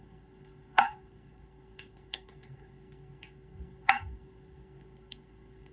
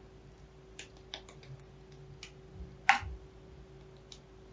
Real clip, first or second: second